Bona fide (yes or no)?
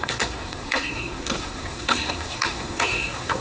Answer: no